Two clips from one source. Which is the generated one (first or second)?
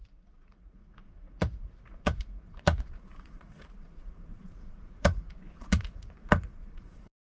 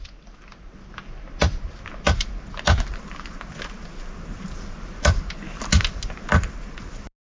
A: first